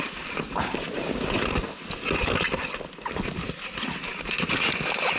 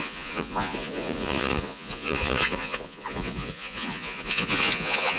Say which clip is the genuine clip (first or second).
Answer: first